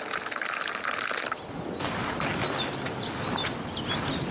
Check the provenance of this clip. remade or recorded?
recorded